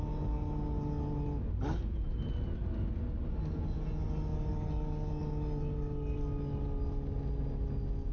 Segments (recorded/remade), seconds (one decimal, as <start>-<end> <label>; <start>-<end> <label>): 0.0-8.1 recorded